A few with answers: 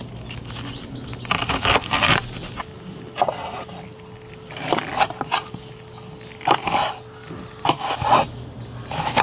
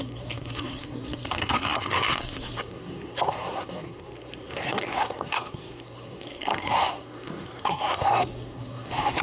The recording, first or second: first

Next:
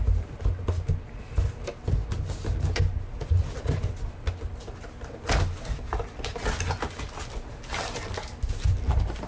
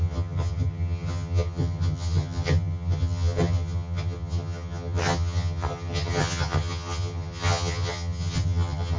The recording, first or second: first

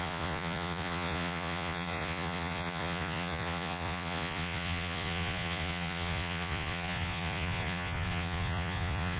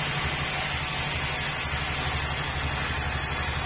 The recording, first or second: second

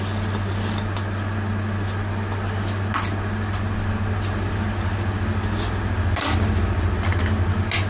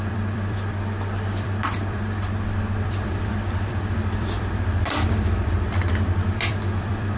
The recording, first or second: first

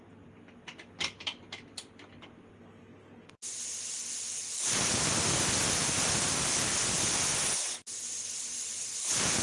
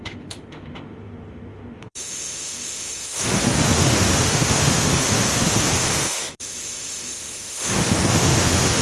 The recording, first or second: first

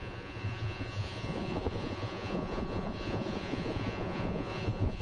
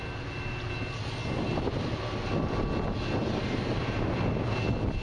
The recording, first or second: second